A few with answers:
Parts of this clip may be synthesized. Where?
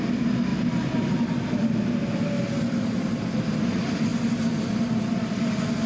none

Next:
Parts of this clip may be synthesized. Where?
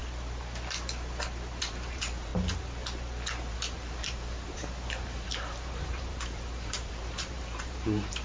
1.6-2.3; 3.5-8.2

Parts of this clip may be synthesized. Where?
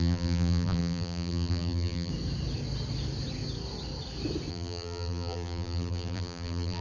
0.0-2.1; 4.5-6.8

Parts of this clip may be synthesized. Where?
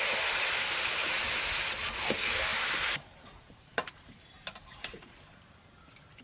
1.0-1.6; 2.5-6.2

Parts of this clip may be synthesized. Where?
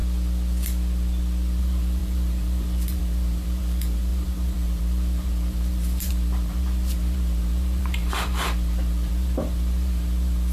1.6-10.5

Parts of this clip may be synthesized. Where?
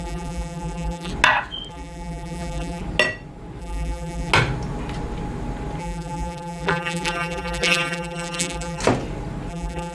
0.0-1.1; 1.7-2.8; 3.6-4.3; 5.8-8.8; 9.5-9.9